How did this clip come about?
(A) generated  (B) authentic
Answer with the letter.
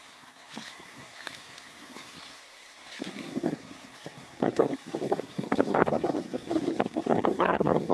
A